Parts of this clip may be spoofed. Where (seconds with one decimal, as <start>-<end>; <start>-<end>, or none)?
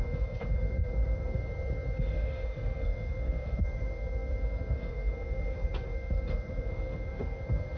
0.0-1.4; 2.0-7.8